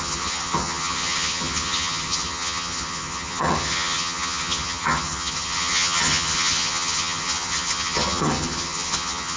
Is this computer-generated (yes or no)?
yes